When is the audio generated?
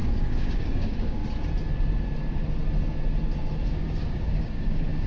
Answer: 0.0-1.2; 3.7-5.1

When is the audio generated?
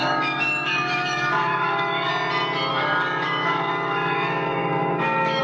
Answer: 0.0-2.1; 2.7-5.4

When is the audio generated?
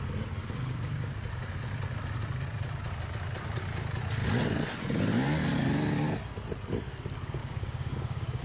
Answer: 0.4-1.2; 7.4-8.4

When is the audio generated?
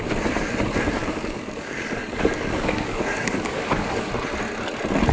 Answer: 1.0-4.1